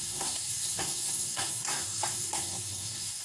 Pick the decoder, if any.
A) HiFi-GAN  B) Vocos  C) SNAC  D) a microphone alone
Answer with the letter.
C